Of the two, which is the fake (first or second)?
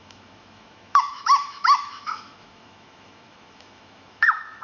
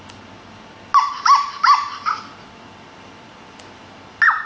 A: first